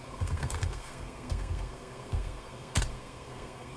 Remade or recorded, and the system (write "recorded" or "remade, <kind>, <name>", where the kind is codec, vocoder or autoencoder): remade, codec, SNAC